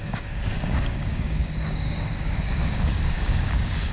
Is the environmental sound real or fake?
fake